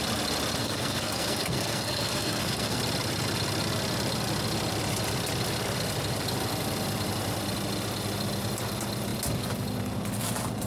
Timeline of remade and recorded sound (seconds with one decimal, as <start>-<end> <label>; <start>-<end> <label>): 0.0-0.6 recorded; 0.6-2.8 remade; 2.8-10.7 recorded